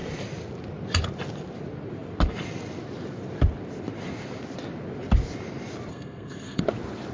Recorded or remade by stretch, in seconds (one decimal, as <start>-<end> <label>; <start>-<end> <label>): 0.0-5.9 recorded; 5.9-6.6 remade; 6.6-7.1 recorded